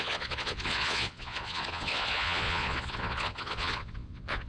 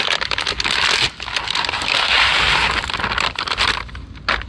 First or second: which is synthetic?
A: first